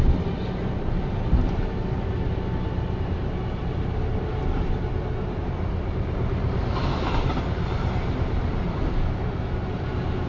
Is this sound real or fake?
real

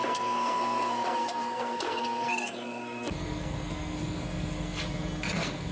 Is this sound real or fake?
fake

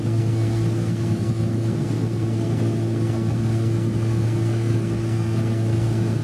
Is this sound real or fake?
fake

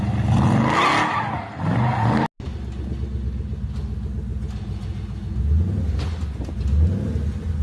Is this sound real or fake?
real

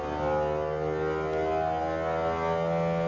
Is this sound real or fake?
real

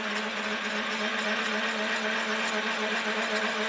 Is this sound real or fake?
real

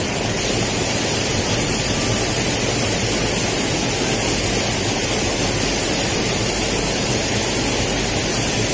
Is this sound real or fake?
real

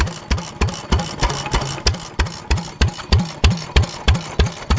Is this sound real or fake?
real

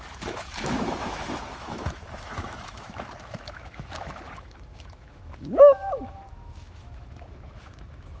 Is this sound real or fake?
fake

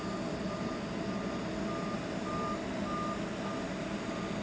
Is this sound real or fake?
real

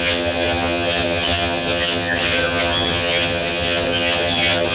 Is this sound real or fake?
fake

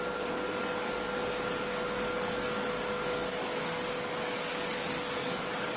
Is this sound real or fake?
fake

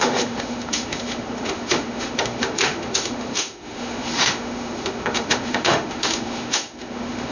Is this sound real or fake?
fake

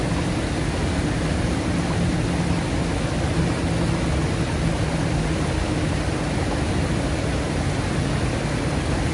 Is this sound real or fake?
real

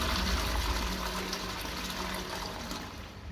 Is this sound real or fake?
real